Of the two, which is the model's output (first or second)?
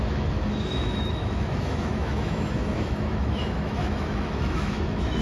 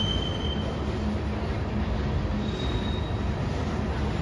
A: first